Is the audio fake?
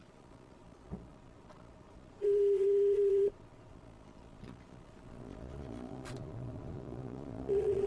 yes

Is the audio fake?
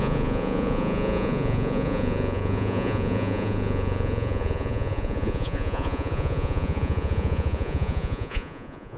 yes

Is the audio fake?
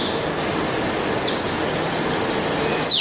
no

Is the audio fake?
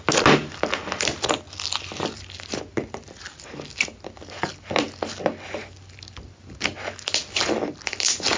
no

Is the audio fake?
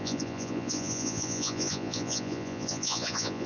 yes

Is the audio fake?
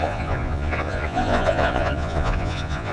yes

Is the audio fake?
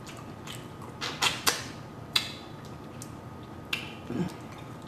no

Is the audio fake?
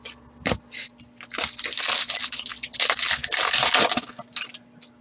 no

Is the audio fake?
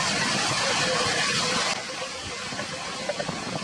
no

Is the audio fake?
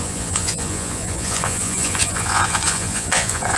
yes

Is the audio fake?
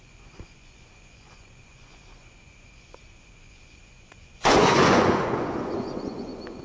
yes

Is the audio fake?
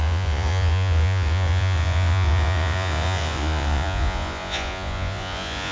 yes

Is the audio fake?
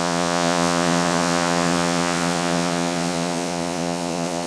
yes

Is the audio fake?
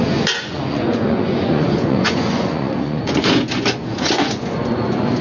yes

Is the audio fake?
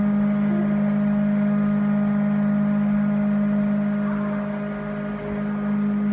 no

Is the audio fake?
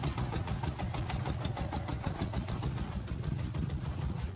yes